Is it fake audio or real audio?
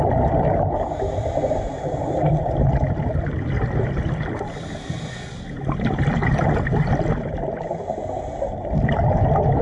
real